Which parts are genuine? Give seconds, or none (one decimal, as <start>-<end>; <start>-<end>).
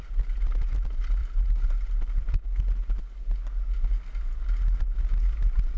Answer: 0.0-1.2; 2.3-5.8